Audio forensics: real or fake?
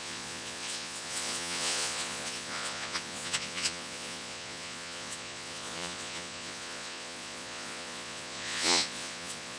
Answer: fake